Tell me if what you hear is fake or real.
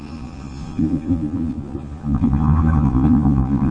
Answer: fake